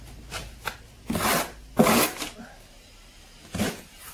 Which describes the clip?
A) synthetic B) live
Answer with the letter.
B